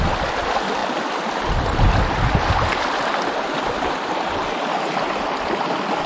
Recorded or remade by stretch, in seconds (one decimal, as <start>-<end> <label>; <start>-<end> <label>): 0.0-0.8 recorded; 0.8-1.3 remade; 1.3-6.1 recorded